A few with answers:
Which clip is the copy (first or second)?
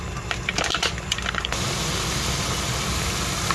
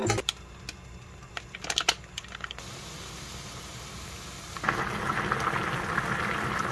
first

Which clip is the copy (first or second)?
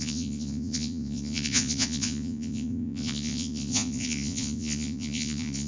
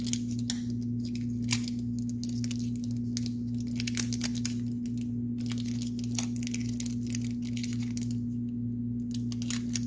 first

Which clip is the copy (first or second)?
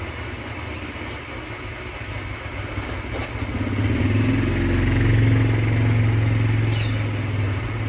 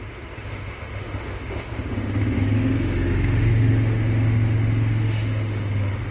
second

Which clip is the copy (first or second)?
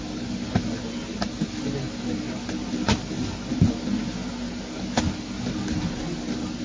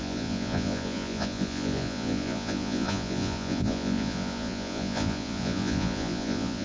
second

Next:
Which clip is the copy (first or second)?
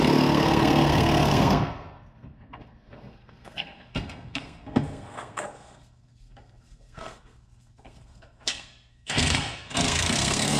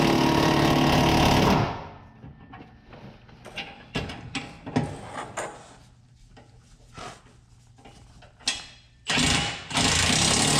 first